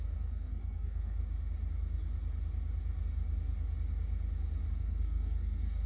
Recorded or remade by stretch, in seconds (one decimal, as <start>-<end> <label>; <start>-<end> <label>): 0.0-1.2 remade; 1.2-4.7 recorded; 4.7-5.9 remade